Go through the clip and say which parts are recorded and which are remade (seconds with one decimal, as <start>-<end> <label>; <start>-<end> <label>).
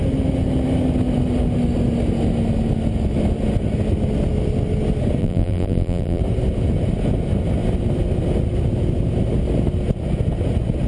0.0-5.2 recorded; 5.2-6.2 remade; 6.2-10.9 recorded